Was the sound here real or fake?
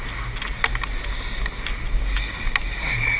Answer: real